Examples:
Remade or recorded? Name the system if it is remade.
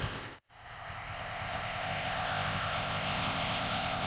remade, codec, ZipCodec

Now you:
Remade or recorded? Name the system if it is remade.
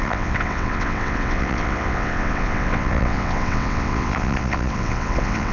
remade, vocoder, WaveNeXt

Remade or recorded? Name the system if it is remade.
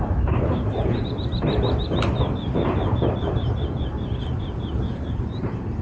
remade, vocoder, BigVGAN v2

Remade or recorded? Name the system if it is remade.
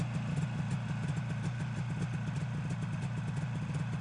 recorded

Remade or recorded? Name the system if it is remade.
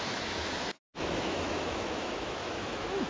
remade, autoencoder, DAC-VAE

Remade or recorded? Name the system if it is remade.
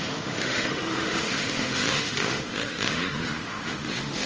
remade, autoencoder, DAC-VAE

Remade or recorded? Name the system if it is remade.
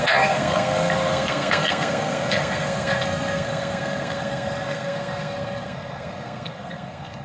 remade, codec, SNAC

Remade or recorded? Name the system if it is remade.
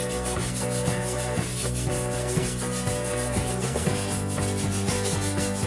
remade, codec, SNAC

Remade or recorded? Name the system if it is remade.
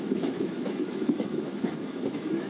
remade, autoencoder, DAC-VAE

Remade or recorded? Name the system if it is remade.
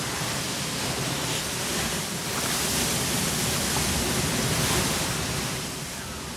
recorded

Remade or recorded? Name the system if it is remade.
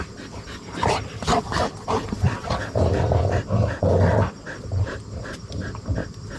recorded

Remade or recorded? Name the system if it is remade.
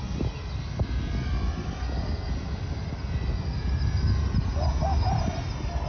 recorded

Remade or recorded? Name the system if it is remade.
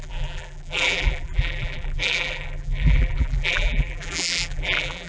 remade, vocoder, BigVGAN v2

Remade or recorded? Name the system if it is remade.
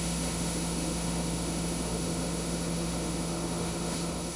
remade, autoencoder, DAC-VAE